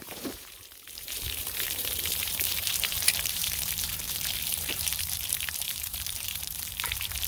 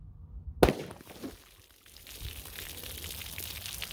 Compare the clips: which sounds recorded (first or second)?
second